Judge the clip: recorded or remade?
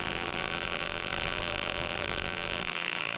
remade